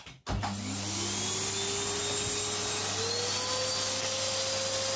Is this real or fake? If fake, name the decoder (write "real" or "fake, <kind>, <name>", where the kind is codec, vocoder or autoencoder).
real